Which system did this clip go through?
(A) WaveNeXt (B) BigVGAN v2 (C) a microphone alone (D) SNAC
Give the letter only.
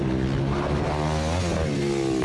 C